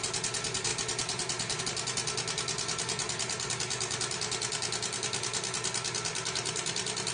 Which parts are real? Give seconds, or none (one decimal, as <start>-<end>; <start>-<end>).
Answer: 0.0-7.1